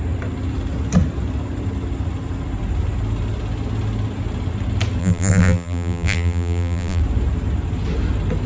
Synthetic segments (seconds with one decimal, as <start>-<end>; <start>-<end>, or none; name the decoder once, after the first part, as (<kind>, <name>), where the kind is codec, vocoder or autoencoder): 5.0-7.0 (vocoder, BigVGAN v2)